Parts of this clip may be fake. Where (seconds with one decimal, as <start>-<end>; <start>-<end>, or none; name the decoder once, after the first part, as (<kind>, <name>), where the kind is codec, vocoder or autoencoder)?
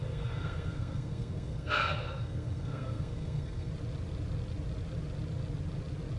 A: 0.0-3.7 (codec, SNAC)